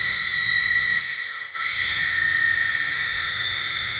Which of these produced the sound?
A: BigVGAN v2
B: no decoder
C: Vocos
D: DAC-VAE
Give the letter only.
D